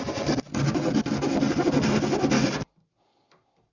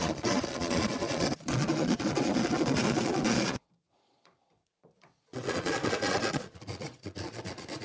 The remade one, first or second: second